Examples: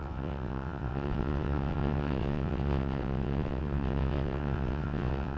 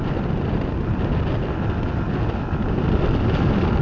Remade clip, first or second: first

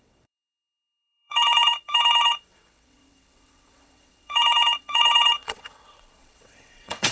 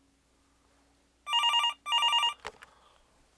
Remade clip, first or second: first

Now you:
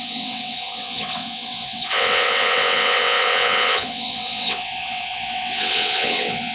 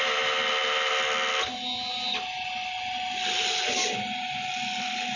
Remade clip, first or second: first